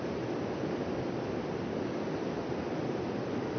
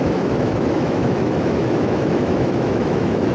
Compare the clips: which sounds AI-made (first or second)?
second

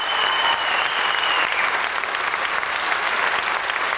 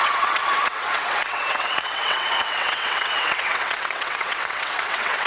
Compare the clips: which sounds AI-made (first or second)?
second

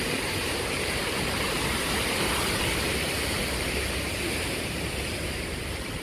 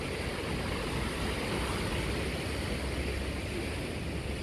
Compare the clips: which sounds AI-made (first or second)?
first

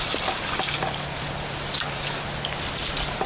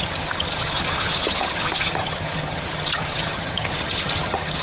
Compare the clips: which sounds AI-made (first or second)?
second